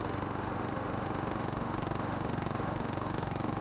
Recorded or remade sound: remade